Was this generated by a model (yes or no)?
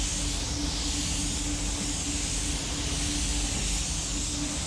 no